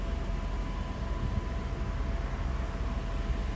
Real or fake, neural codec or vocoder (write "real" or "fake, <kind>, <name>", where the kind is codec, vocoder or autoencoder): real